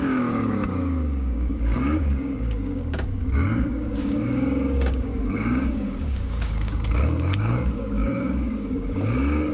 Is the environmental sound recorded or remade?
remade